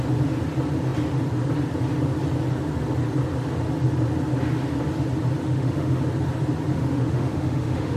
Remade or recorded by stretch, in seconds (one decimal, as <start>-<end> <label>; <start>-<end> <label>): 0.0-5.4 recorded; 5.4-6.0 remade; 6.0-6.7 recorded; 6.7-8.0 remade